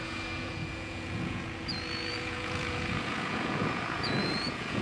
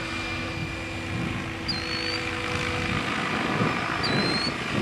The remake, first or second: first